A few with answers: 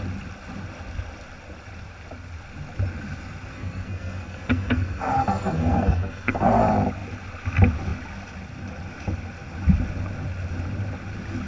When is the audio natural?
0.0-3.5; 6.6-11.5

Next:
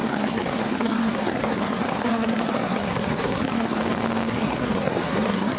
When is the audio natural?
3.8-4.3

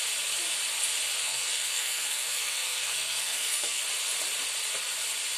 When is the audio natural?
0.0-1.2; 3.8-5.4

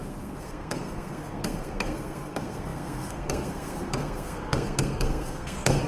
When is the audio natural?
none

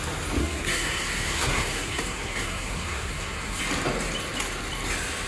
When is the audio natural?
0.0-0.4; 3.6-5.3

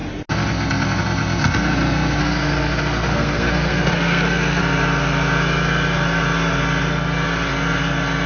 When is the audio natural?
0.0-2.2; 4.6-8.3